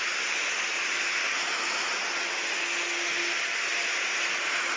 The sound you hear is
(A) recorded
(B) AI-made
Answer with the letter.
A